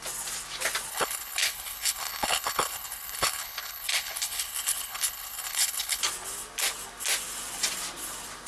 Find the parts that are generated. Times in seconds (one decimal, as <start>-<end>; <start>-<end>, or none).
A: 0.9-6.0